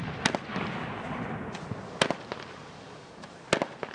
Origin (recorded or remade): recorded